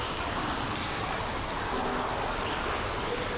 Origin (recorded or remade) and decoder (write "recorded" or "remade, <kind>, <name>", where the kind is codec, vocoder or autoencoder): recorded